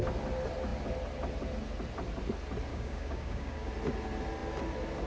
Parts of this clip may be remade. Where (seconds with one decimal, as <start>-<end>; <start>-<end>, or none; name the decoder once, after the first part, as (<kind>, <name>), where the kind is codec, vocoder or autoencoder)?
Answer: 2.7-3.7 (codec, DAC)